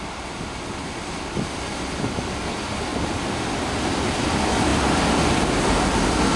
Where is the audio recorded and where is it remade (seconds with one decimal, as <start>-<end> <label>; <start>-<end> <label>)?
0.0-6.4 recorded